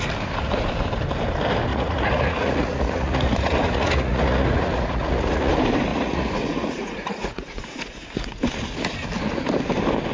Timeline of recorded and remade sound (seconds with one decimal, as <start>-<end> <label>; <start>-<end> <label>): 0.0-1.7 recorded; 1.7-5.5 remade; 5.5-5.9 recorded; 5.9-8.4 remade; 8.4-10.1 recorded